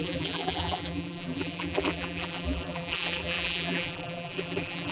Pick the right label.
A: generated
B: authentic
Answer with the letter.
A